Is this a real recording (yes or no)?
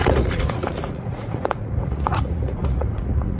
no